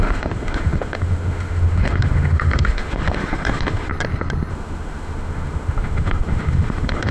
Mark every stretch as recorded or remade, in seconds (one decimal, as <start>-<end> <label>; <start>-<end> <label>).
0.0-3.9 remade; 3.9-4.5 recorded; 4.5-7.1 remade